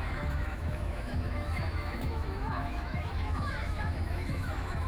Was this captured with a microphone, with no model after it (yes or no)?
no